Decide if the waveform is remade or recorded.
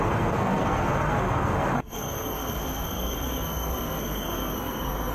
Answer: remade